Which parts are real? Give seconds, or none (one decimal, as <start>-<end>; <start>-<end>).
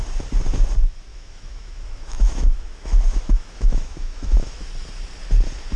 0.0-1.1; 4.6-5.8